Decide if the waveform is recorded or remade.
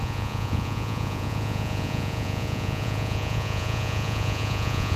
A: remade